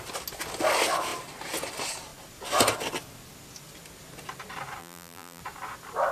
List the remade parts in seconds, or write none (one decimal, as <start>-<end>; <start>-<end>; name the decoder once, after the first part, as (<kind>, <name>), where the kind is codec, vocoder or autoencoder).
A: 4.8-5.4 (vocoder, BigVGAN v2)